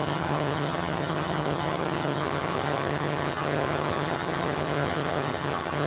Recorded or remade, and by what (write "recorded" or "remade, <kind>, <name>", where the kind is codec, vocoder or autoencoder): remade, vocoder, HiFi-GAN